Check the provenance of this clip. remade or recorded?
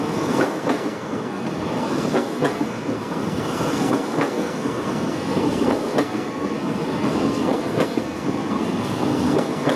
remade